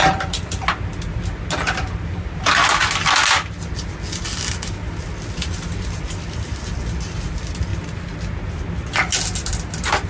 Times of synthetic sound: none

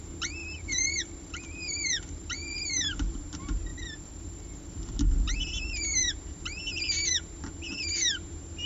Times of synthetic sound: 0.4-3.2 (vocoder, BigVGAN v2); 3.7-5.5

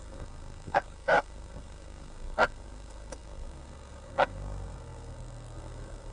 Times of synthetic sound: 0.0-6.1 (codec, SNAC)

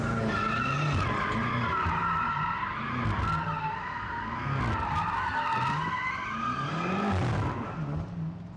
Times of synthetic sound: 3.6-4.6 (codec, SNAC)

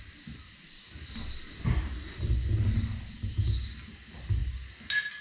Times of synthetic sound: none

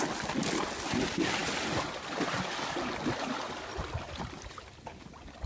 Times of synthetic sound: none